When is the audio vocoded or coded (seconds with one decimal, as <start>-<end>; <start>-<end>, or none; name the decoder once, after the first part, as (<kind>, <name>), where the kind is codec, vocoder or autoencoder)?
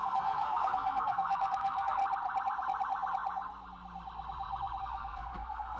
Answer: 0.0-2.0 (codec, SNAC); 4.8-5.8